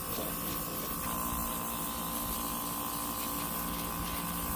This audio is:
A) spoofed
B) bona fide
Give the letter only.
B